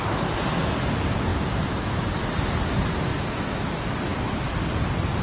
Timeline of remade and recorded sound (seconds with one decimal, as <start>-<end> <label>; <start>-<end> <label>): 0.0-3.1 recorded; 3.1-3.7 remade; 3.7-5.2 recorded